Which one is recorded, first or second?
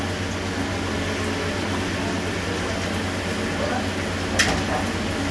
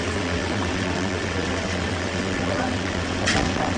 first